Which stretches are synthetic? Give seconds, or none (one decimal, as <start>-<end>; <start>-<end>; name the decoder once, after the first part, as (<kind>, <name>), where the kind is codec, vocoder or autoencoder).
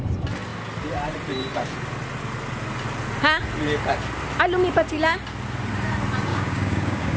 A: 6.3-7.2 (codec, DAC)